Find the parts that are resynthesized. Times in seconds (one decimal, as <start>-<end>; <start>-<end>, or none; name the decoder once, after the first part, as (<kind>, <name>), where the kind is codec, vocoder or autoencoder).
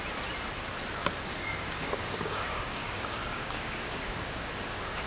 1.3-4.4 (codec, DAC)